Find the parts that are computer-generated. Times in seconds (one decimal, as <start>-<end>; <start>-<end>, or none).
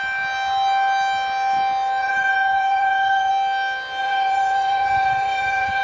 2.0-3.3; 4.0-5.8